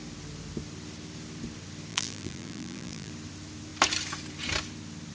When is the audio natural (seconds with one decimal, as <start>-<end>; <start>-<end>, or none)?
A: 0.0-1.9; 3.1-5.1